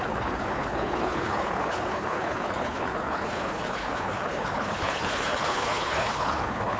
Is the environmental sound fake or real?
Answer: fake